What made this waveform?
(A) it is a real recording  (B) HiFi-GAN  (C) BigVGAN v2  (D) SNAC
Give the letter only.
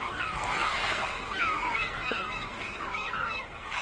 D